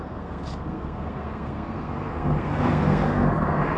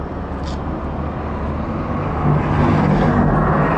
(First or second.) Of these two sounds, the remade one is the first